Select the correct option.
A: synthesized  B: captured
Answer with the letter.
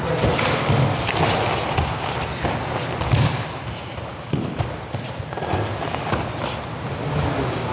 B